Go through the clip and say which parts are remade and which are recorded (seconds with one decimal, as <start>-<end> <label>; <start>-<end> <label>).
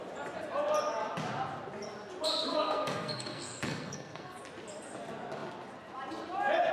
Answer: 0.0-2.5 recorded; 2.5-4.4 remade; 4.4-6.7 recorded